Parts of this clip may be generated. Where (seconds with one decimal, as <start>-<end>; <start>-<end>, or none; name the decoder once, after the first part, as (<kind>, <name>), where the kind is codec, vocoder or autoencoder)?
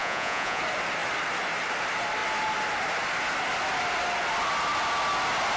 0.0-0.6 (vocoder, Vocos)